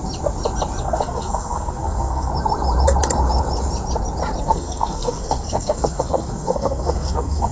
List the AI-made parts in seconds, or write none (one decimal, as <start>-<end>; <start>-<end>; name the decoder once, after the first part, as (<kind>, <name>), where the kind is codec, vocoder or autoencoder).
0.8-2.3 (codec, SNAC); 4.4-7.5